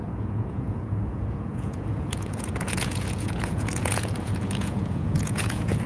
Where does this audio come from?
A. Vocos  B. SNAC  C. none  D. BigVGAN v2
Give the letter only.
A